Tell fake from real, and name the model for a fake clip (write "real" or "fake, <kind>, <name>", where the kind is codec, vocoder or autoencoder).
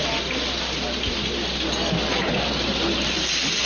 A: real